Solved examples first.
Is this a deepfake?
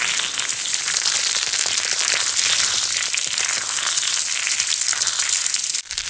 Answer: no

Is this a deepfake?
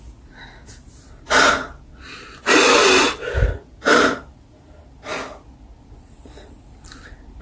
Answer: no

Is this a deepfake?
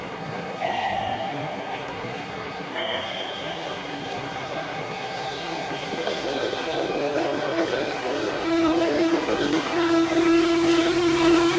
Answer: yes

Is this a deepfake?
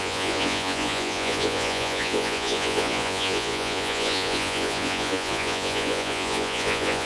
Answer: yes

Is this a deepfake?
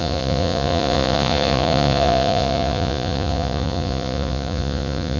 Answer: yes